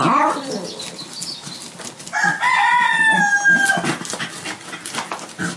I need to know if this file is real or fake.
real